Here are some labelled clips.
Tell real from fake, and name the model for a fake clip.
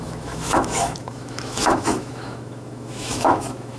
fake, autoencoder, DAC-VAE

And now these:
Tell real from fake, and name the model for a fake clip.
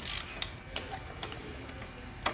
real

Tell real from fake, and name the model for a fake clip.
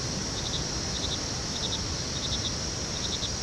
fake, vocoder, BigVGAN v2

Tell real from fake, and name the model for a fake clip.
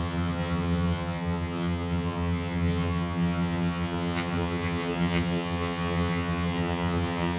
fake, vocoder, HiFi-GAN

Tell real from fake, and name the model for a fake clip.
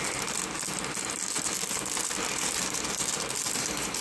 real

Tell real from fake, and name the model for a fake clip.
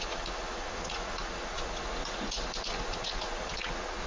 fake, vocoder, Vocos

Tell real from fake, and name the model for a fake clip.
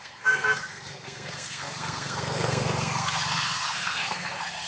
fake, codec, SNAC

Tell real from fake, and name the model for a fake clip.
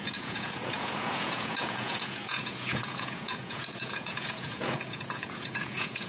fake, vocoder, Vocos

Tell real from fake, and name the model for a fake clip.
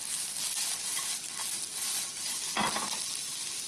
real